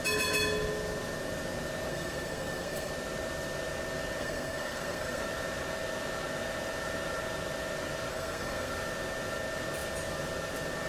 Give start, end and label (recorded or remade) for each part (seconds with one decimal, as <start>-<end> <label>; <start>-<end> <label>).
0.0-1.9 recorded; 1.9-2.9 remade; 2.9-4.2 recorded; 4.2-5.2 remade; 5.2-8.1 recorded; 8.1-8.7 remade; 8.7-10.9 recorded